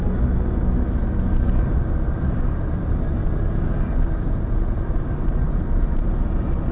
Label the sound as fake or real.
real